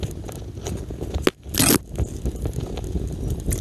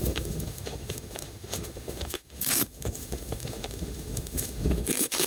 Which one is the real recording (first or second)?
first